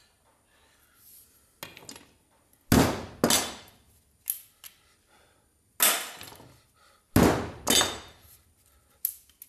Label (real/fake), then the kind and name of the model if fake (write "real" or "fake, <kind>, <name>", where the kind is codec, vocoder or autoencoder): real